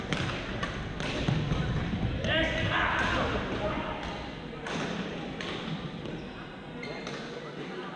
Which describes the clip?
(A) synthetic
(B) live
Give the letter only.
B